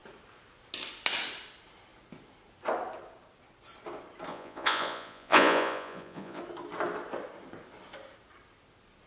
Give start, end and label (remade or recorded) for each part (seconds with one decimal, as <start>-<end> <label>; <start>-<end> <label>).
0.0-4.3 recorded; 4.3-6.4 remade; 6.4-9.1 recorded